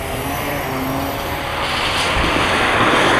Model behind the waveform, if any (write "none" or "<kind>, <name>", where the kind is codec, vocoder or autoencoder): none